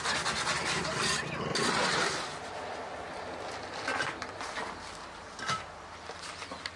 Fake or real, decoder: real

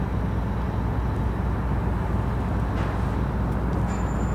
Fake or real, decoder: real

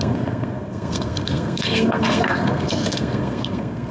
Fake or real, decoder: fake, codec, SNAC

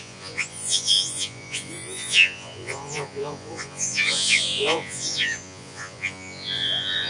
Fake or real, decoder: fake, vocoder, Vocos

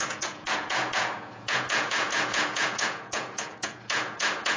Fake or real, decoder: fake, vocoder, Vocos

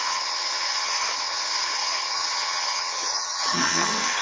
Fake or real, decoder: fake, vocoder, HiFi-GAN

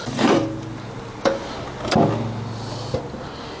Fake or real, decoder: real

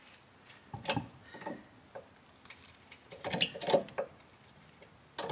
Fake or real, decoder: real